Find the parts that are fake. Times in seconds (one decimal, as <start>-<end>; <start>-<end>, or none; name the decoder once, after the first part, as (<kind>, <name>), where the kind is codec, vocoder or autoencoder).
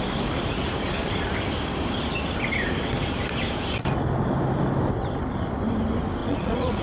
6.2-6.8 (vocoder, Vocos)